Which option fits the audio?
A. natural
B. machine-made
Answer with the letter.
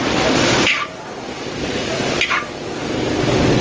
A